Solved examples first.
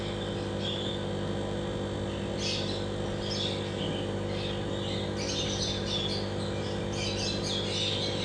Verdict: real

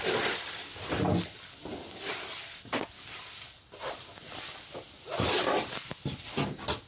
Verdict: real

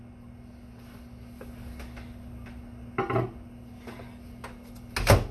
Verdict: real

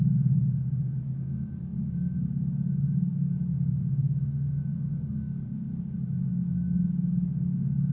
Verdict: fake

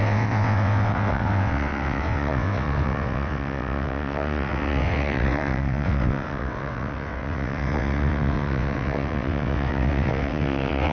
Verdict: fake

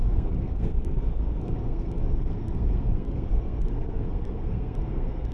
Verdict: fake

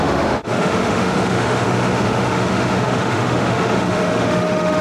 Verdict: fake